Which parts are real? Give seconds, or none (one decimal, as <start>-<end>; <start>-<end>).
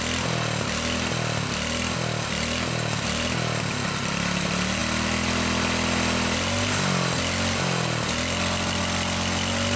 0.0-9.8